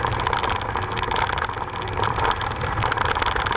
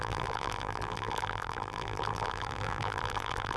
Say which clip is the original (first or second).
first